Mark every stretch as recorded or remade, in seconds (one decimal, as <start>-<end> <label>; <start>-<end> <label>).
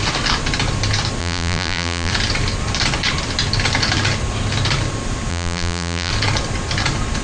0.0-1.2 recorded; 1.2-2.1 remade; 2.1-5.3 recorded; 5.3-6.1 remade; 6.1-7.2 recorded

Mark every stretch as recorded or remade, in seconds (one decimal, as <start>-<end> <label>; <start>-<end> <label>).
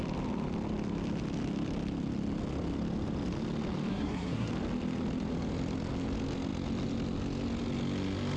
0.0-3.9 recorded; 3.9-4.5 remade; 4.5-8.4 recorded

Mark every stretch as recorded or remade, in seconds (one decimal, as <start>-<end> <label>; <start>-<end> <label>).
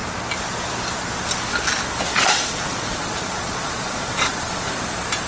0.0-2.1 recorded; 2.1-4.7 remade; 4.7-5.3 recorded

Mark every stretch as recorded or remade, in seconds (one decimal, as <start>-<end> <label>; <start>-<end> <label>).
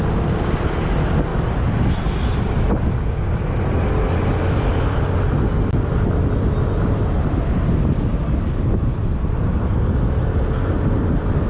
0.0-11.5 recorded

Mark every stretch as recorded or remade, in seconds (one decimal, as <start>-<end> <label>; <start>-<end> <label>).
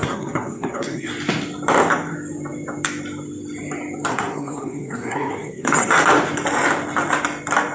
0.0-1.1 remade; 1.1-4.1 recorded; 4.1-5.9 remade; 5.9-7.7 recorded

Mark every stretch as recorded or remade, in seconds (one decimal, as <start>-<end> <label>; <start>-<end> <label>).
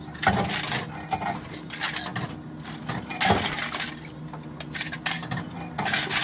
0.0-6.2 recorded